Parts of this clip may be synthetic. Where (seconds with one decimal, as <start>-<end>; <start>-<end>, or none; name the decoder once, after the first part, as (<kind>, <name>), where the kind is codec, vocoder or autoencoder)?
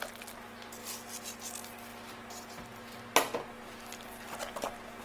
none